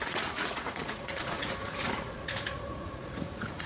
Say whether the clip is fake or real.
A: fake